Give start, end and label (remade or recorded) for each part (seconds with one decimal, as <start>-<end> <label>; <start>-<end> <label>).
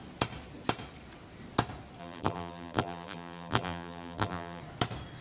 0.0-2.0 recorded; 2.0-4.6 remade; 4.6-5.2 recorded